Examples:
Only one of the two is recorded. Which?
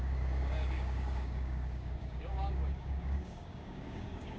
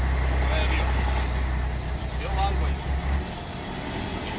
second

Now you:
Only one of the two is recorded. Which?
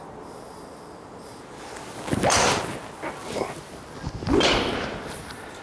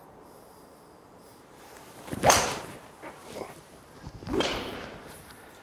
first